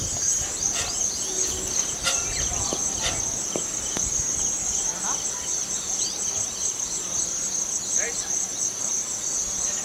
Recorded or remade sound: recorded